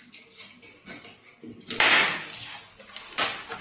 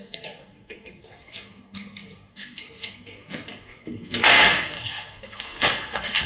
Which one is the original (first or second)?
first